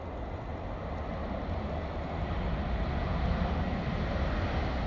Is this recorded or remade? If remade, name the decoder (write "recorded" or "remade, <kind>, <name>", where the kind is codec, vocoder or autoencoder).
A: recorded